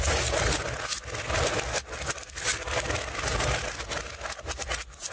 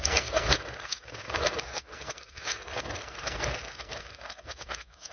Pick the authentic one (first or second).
first